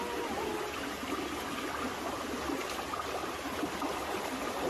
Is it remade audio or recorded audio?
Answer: recorded